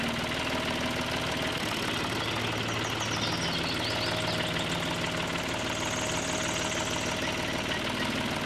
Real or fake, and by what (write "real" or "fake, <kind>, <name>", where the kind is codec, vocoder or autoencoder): real